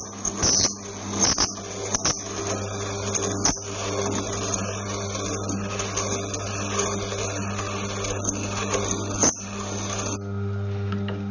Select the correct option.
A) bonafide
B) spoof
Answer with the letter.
A